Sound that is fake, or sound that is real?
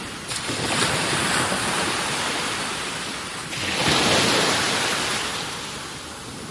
real